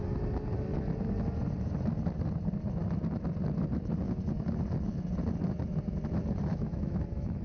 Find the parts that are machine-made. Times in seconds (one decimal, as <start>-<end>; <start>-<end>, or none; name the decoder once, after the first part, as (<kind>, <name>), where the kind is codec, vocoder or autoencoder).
6.5-7.4 (autoencoder, DAC-VAE)